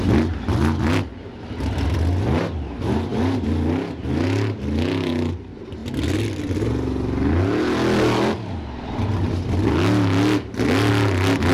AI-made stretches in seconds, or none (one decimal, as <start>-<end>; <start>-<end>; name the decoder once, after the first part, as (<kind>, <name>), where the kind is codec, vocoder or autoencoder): none